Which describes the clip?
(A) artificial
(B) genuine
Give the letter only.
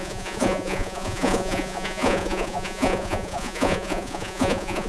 A